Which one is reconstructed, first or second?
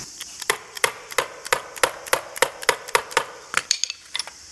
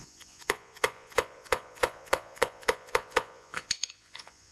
second